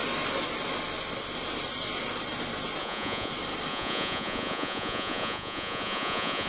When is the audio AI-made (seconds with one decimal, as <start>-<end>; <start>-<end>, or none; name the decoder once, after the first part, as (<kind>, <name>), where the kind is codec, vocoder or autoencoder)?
2.8-3.3 (vocoder, Vocos); 3.7-6.5